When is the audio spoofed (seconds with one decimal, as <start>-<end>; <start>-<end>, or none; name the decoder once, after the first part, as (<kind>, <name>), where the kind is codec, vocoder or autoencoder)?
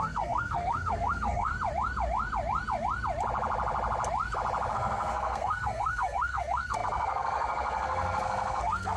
0.0-1.5 (codec, SNAC); 4.7-9.0